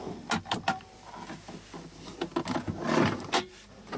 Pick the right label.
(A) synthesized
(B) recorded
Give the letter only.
B